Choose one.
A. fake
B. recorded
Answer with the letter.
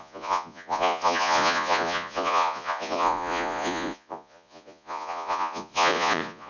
A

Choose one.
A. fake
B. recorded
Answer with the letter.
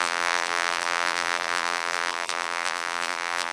A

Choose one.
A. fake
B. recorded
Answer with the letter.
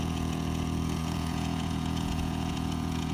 A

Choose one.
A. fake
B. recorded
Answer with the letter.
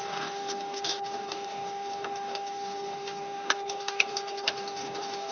A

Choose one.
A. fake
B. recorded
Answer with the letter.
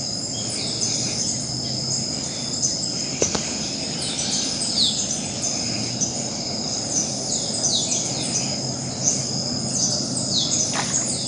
B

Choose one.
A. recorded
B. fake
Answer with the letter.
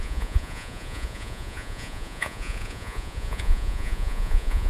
B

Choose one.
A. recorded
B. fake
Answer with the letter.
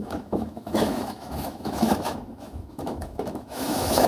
B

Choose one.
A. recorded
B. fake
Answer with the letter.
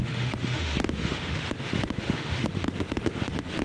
B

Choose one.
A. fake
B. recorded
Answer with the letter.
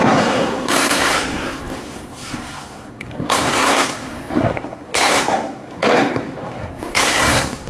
A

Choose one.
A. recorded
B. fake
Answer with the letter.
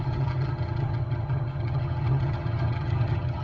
B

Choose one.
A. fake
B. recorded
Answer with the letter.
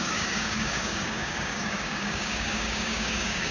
A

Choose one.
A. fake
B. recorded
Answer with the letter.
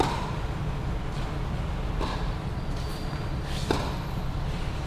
B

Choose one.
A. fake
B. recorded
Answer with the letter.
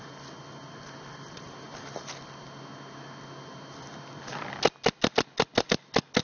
B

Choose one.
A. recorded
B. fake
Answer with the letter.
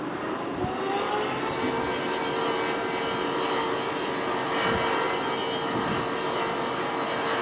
A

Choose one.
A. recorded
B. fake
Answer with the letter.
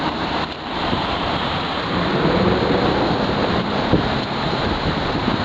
B